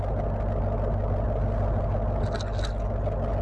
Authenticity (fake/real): real